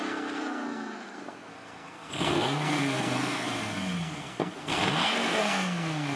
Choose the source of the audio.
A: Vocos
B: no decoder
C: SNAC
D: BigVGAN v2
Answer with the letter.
C